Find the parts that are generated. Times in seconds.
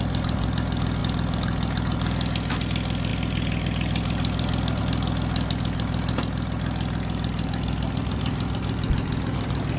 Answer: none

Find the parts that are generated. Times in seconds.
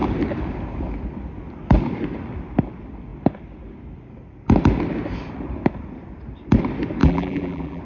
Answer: 7.0-7.8 (vocoder, BigVGAN v2)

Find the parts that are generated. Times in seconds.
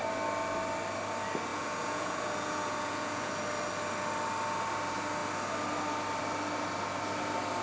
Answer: 1.5-3.3 (vocoder, Vocos)